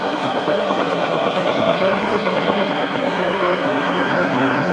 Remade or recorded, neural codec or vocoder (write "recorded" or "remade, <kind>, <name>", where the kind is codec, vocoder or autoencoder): remade, codec, SNAC